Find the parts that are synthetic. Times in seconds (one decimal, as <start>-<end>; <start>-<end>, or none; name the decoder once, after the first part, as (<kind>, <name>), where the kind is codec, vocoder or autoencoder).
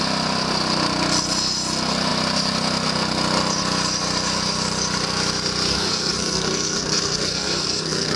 5.7-8.2 (codec, SNAC)